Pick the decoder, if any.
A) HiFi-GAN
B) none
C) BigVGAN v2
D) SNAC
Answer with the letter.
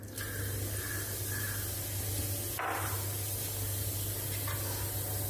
B